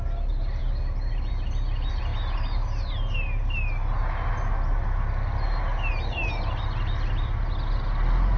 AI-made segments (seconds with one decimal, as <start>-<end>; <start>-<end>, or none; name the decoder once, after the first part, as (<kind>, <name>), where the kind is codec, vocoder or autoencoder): none